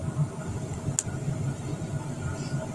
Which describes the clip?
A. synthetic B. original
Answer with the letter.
B